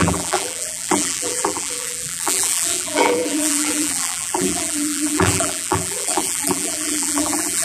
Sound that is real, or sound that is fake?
fake